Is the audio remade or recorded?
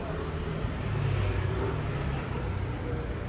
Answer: recorded